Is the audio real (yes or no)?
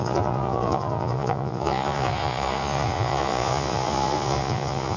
no